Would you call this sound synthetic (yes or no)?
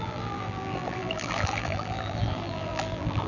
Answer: yes